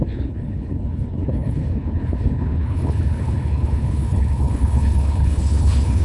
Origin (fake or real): fake